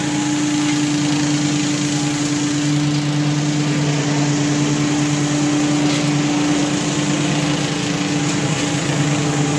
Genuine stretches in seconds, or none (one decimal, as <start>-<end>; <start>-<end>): 0.0-9.6